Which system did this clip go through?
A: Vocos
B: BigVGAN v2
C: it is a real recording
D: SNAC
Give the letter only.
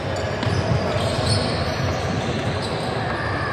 B